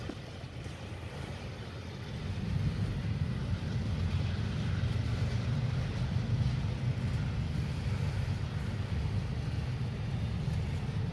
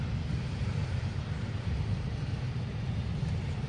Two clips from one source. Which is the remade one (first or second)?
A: second